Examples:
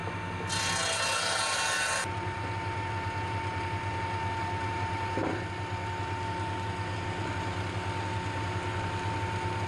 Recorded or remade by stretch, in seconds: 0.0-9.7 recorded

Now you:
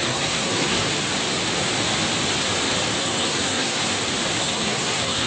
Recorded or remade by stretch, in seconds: 0.0-0.9 remade; 0.9-3.0 recorded; 3.0-3.8 remade; 3.8-4.4 recorded; 4.4-5.3 remade

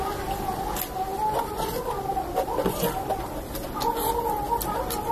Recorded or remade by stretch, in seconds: 0.0-5.1 recorded

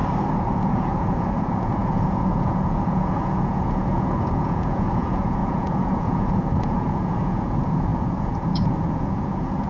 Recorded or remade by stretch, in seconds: 0.0-0.5 recorded; 0.5-9.7 remade

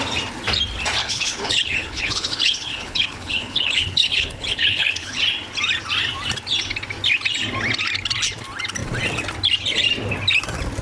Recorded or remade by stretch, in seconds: 0.0-1.0 recorded; 1.0-5.2 remade; 5.2-10.8 recorded